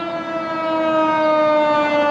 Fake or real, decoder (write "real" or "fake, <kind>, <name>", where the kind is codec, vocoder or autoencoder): real